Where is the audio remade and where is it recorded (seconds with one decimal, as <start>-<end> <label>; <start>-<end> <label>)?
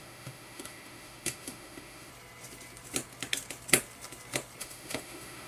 0.0-2.1 remade; 2.1-4.6 recorded; 4.6-5.5 remade